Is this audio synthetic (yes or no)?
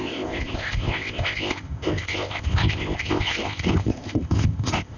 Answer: yes